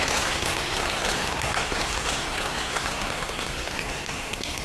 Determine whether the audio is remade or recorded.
remade